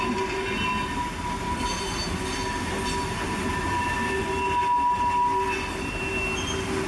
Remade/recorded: recorded